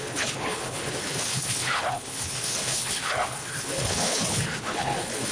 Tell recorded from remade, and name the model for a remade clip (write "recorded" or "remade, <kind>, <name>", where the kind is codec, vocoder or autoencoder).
remade, codec, HILCodec